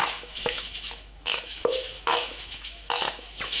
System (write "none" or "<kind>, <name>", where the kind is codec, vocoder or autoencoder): autoencoder, DAC-VAE